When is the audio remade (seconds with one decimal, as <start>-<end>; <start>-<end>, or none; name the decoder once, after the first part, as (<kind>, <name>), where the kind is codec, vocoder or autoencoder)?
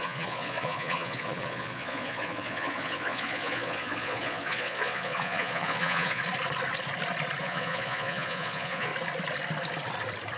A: 0.0-6.2 (vocoder, Vocos); 7.4-8.9